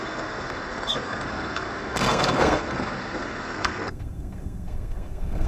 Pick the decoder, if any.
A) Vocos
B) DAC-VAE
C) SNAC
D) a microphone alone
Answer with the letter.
C